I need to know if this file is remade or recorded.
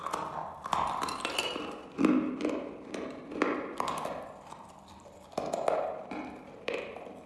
remade